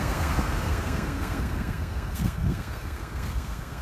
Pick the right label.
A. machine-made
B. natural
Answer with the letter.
A